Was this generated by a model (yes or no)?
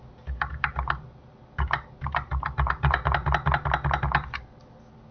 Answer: no